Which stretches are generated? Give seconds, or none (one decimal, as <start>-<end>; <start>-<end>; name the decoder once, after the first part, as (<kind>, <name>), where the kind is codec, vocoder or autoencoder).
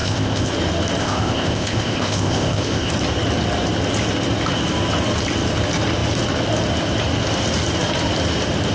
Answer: 0.0-0.5 (codec, ZipCodec); 1.0-2.9